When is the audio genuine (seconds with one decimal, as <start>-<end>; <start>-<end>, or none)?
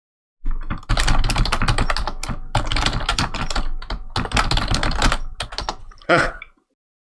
0.0-5.8; 6.4-7.0